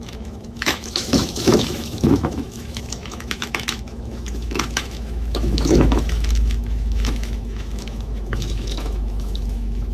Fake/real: fake